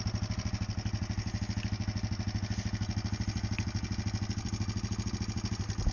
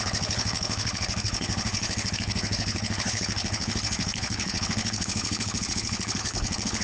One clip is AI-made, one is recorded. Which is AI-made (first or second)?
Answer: second